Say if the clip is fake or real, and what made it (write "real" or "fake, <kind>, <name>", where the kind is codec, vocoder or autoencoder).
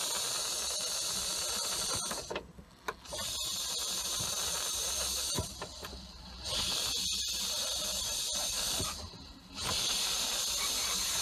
real